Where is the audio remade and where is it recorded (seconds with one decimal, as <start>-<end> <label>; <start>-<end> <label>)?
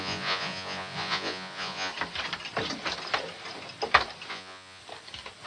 0.0-1.9 remade; 1.9-4.3 recorded; 4.3-4.8 remade; 4.8-5.5 recorded